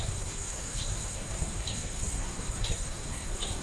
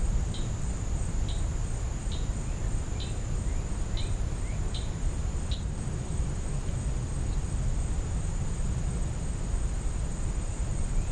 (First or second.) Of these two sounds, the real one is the second